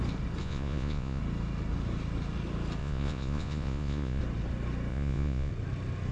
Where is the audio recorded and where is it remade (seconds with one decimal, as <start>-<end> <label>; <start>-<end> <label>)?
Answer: 0.0-0.4 recorded; 0.4-1.2 remade; 1.2-2.8 recorded; 2.8-4.2 remade; 4.2-4.9 recorded; 4.9-5.5 remade; 5.5-6.1 recorded